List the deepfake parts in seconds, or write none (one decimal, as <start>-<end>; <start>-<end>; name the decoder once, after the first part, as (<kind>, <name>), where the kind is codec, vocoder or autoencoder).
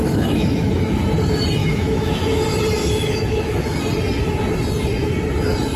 0.0-1.0 (autoencoder, DAC-VAE); 1.6-2.4; 2.8-3.8